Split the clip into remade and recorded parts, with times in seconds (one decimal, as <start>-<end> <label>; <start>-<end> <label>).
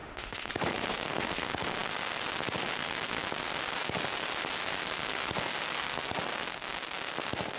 0.0-0.5 remade; 0.5-7.6 recorded